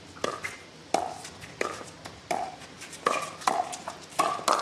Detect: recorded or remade recorded